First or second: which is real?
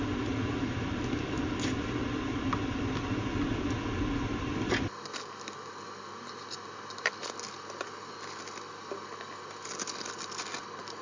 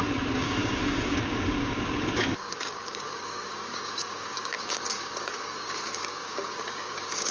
first